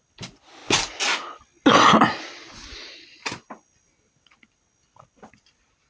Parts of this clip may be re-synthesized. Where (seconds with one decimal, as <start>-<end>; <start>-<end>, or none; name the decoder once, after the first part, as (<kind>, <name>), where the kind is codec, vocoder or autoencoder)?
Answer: none